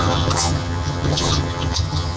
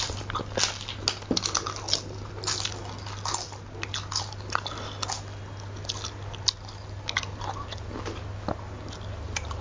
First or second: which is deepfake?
first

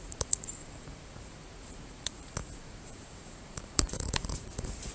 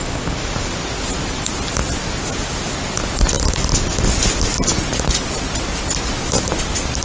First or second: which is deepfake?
first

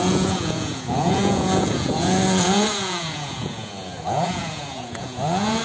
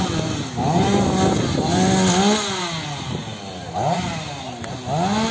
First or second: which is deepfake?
first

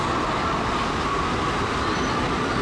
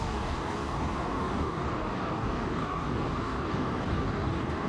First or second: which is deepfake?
second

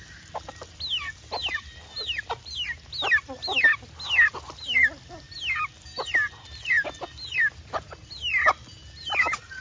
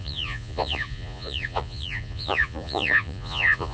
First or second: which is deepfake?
second